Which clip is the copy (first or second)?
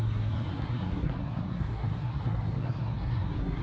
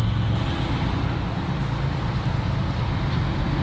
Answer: first